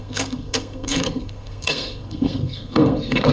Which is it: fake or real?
fake